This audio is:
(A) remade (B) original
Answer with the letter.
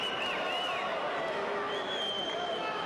B